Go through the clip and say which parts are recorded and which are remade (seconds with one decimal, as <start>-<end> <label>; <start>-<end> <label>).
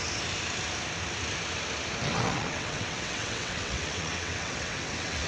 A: 0.0-2.0 recorded; 2.0-5.3 remade